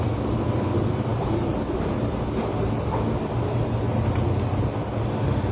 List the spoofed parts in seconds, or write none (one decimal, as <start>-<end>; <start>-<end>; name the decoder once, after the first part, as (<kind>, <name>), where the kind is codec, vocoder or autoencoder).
none